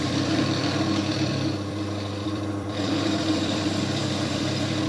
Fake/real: fake